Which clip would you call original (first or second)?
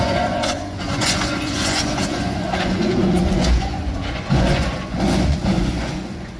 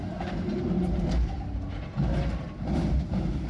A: second